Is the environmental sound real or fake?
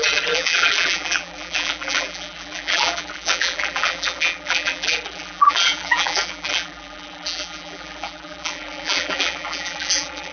fake